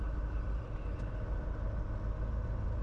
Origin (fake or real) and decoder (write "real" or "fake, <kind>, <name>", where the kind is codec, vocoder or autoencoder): real